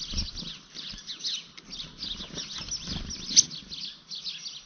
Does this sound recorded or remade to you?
recorded